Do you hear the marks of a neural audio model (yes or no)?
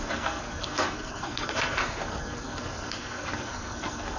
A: yes